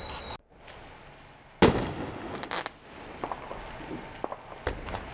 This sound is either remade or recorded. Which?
recorded